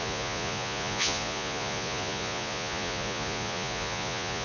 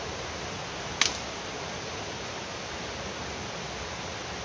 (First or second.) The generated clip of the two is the first